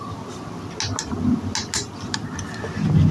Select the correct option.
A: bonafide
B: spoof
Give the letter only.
A